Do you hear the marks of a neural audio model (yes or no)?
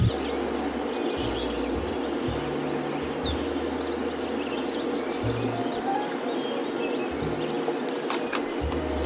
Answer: no